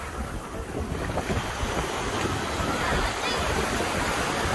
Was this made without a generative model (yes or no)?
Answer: yes